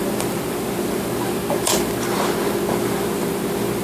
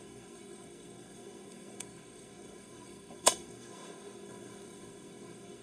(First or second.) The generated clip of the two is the second